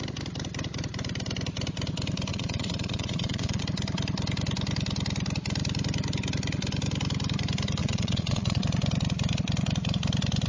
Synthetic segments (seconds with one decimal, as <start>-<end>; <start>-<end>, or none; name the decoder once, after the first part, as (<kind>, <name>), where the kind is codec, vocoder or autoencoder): 2.3-3.6 (vocoder, Vocos); 7.8-8.6